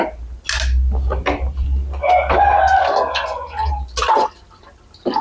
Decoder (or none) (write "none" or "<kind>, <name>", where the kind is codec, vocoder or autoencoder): none